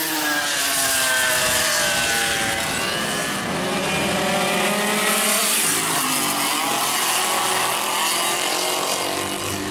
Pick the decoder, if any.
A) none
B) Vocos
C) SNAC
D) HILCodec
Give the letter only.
A